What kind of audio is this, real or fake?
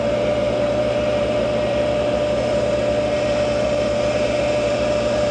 fake